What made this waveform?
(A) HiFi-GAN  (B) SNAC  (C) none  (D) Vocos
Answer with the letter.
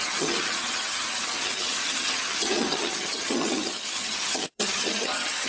A